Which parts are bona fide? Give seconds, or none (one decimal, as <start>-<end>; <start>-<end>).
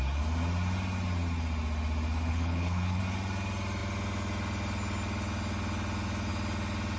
0.0-2.3; 3.0-7.0